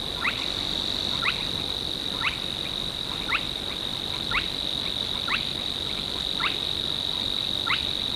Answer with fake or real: real